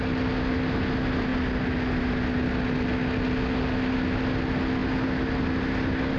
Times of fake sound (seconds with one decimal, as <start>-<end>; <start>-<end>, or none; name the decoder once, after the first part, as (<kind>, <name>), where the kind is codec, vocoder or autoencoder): none